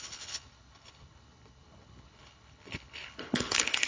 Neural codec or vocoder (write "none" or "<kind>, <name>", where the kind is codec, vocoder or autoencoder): codec, HILCodec